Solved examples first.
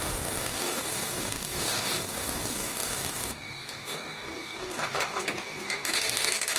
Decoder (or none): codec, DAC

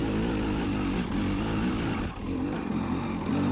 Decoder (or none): none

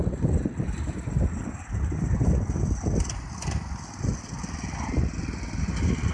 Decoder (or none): none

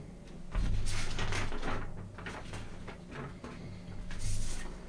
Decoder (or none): none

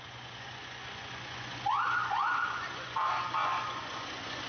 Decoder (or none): vocoder, Vocos